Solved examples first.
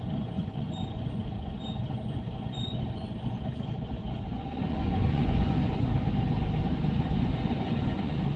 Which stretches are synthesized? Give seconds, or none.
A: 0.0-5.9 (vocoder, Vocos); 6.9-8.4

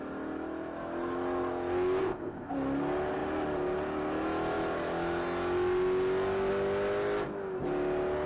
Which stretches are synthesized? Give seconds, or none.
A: 2.0-2.5 (codec, ZipCodec)

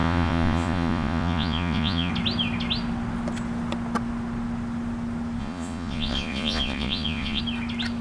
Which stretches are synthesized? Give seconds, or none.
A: 0.0-2.1 (vocoder, Vocos); 5.4-7.4